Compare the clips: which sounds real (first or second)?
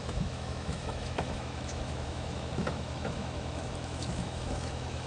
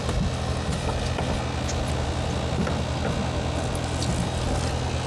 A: second